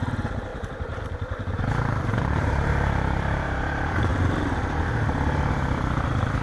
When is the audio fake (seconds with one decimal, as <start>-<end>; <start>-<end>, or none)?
0.0-4.1; 5.5-6.4

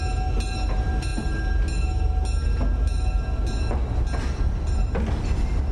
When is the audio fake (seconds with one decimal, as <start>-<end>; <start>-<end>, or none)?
none

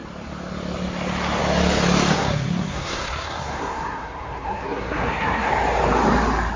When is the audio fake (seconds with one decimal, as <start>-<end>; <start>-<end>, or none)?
2.1-5.5